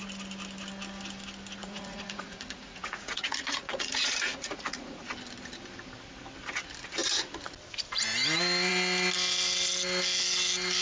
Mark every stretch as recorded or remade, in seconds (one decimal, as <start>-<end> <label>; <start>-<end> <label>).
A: 0.0-1.6 recorded; 1.6-5.1 remade; 5.1-10.8 recorded